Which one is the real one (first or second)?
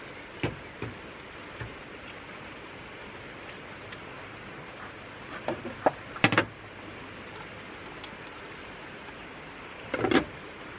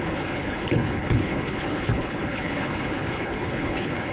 first